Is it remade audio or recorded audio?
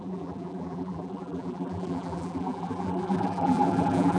remade